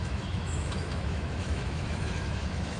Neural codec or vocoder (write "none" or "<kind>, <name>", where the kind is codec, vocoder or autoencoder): autoencoder, DAC-VAE